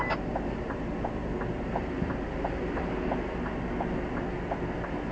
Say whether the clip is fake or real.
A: real